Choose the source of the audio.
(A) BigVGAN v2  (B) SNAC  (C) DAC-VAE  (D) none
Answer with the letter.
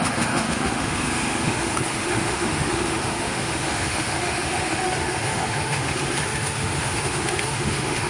C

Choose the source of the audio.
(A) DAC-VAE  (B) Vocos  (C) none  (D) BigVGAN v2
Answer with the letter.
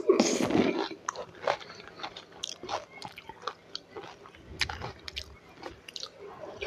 C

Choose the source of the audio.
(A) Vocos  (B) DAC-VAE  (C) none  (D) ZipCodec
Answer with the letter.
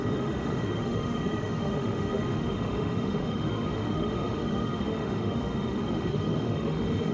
B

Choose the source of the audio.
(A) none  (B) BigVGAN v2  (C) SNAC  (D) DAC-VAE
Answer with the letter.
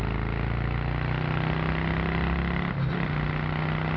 A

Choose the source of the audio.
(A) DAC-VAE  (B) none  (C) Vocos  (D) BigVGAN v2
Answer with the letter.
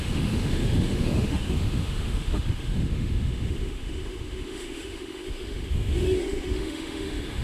A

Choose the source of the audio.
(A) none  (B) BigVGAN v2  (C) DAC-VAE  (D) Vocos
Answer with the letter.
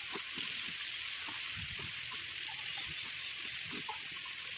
A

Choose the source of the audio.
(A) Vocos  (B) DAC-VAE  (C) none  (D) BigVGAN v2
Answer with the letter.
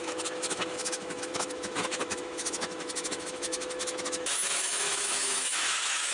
B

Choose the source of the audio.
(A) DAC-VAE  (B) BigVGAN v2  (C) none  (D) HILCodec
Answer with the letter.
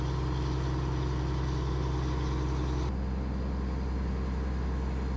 C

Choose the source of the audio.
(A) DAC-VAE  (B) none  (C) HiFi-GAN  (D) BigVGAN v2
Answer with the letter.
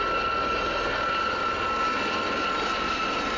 B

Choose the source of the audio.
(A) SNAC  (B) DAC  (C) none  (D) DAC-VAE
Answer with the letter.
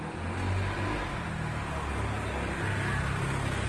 C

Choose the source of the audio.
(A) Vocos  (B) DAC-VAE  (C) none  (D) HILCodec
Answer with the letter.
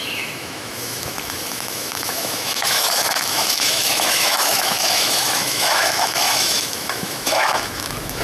B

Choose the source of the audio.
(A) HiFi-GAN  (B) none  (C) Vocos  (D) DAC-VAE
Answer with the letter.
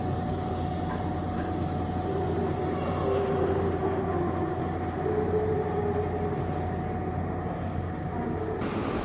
B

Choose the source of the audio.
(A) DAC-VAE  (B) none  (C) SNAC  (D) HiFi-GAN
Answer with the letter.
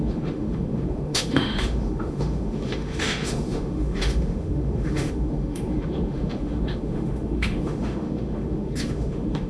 A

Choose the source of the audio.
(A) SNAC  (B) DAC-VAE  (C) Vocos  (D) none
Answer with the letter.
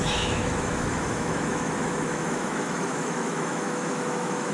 B